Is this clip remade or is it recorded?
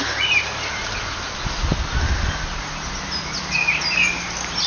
recorded